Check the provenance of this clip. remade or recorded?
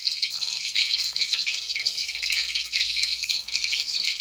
remade